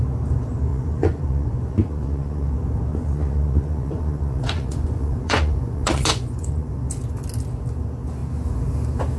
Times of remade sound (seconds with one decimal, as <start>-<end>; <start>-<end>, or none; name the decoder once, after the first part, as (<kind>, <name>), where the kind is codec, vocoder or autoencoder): 0.7-2.5 (vocoder, Vocos); 2.9-6.7